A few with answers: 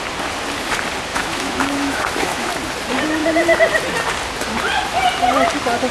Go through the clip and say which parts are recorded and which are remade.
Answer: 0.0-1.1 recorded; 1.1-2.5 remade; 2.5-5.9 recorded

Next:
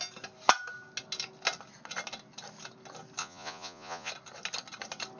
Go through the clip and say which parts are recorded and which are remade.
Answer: 0.0-3.2 recorded; 3.2-4.1 remade; 4.1-5.2 recorded

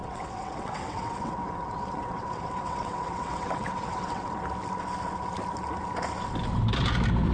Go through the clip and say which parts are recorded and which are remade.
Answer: 0.0-4.4 remade; 4.4-7.3 recorded

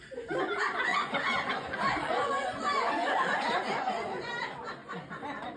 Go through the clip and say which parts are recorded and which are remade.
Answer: 0.0-0.9 recorded; 0.9-4.3 remade; 4.3-4.8 recorded; 4.8-5.6 remade

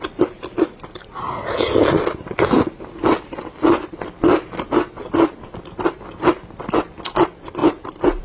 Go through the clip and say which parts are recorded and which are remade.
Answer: 0.0-7.6 recorded; 7.6-8.2 remade